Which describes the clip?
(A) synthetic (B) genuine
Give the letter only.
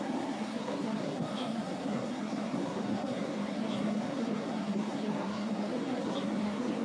A